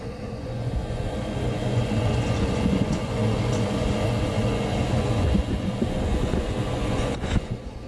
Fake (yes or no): yes